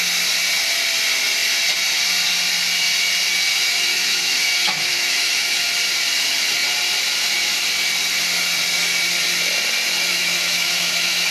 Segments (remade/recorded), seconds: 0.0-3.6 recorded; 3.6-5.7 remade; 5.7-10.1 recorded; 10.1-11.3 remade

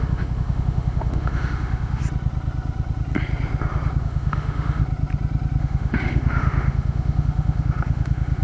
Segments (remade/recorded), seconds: 0.0-2.0 remade; 2.0-4.0 recorded; 4.0-4.8 remade; 4.8-5.6 recorded; 5.6-8.4 remade